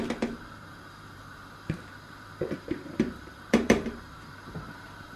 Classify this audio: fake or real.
fake